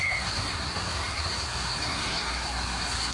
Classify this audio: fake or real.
fake